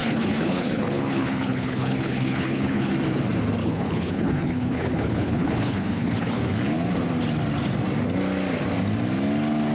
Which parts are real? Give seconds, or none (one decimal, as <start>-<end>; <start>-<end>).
2.9-3.6; 6.4-9.7